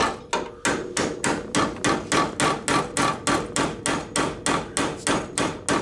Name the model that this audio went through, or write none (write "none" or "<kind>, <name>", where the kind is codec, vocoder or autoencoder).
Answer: none